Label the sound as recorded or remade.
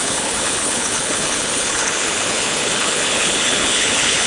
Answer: remade